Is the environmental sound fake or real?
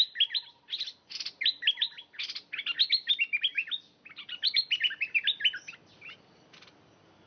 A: real